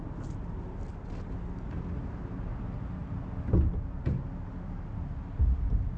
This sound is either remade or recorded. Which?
recorded